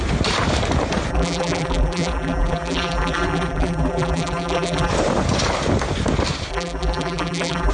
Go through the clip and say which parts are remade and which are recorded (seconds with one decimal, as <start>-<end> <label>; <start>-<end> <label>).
0.0-1.1 recorded; 1.1-4.9 remade; 4.9-6.5 recorded; 6.5-7.7 remade